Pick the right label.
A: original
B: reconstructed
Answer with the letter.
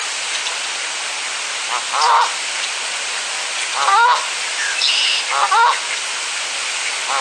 A